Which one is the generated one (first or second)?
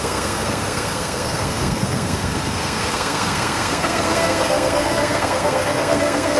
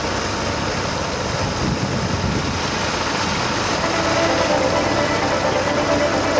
first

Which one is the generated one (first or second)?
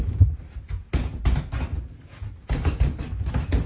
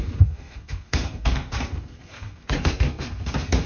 second